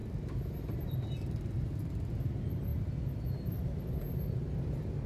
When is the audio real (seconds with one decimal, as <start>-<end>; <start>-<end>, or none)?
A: 0.0-5.1